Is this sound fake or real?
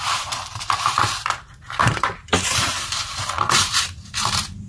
fake